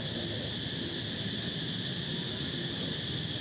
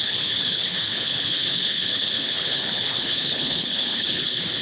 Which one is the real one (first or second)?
first